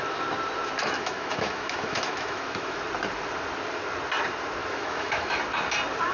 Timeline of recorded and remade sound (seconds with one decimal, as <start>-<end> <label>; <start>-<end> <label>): 0.0-0.8 recorded; 0.8-2.8 remade; 2.8-4.6 recorded; 4.6-5.4 remade; 5.4-6.1 recorded